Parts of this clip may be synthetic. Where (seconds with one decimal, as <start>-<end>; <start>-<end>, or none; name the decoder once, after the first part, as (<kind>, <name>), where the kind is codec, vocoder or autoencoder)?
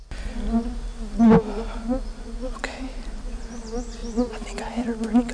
2.6-3.6 (vocoder, BigVGAN v2); 4.0-5.3